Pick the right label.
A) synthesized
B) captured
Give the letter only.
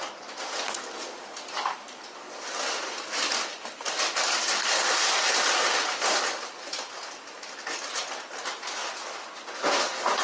B